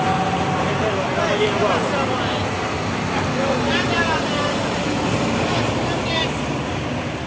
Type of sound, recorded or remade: recorded